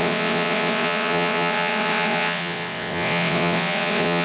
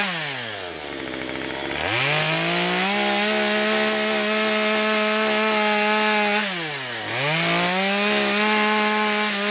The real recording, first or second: second